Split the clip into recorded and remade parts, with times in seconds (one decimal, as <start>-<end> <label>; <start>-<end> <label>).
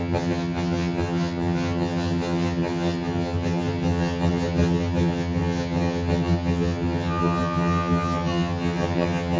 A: 0.0-9.4 remade